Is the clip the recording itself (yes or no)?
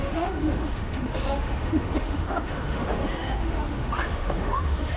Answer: no